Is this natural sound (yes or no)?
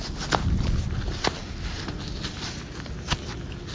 yes